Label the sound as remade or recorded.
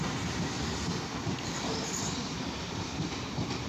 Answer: recorded